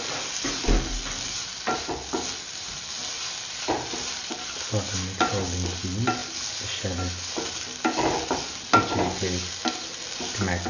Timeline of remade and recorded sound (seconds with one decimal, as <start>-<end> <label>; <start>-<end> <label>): 0.0-10.7 recorded